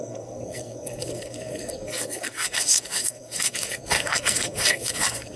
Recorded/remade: remade